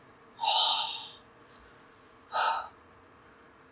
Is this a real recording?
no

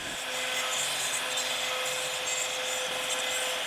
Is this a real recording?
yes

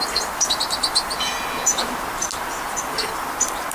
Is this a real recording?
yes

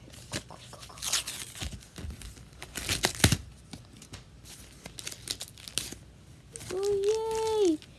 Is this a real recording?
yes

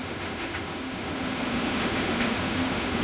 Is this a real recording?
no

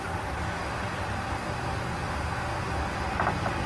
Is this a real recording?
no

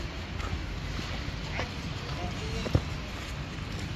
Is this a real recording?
yes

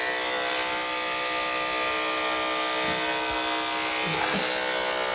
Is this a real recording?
yes